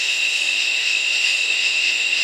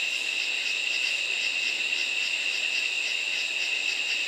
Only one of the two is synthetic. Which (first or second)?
first